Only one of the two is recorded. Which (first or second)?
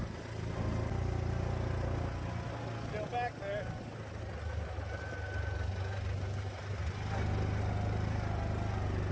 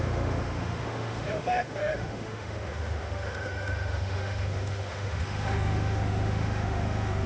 first